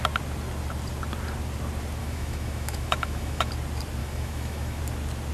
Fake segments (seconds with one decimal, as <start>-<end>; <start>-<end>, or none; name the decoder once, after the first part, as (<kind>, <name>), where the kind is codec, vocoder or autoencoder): 2.0-3.5 (autoencoder, DAC-VAE); 4.0-4.8